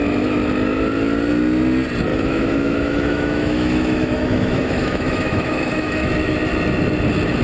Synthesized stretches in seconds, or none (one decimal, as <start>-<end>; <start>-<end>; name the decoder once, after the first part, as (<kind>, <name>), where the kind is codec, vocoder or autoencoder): 2.1-6.1 (autoencoder, DAC-VAE)